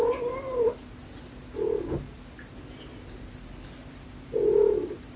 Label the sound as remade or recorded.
recorded